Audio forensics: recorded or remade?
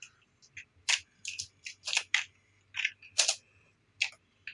recorded